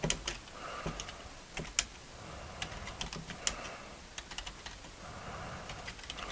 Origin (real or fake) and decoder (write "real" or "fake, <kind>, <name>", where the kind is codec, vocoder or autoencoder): real